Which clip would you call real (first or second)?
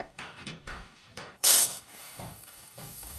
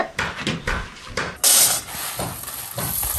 second